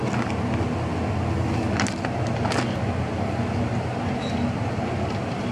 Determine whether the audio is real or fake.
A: real